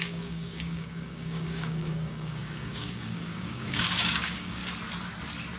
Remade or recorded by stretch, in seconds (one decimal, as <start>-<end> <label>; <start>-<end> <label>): 0.0-4.6 remade; 4.6-5.6 recorded

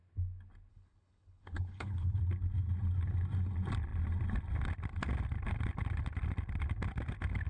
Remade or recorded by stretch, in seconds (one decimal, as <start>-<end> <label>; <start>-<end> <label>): 0.0-0.7 recorded; 0.7-2.2 remade; 2.2-7.5 recorded